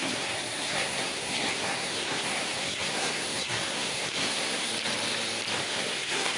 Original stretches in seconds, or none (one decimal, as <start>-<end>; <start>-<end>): 4.7-5.6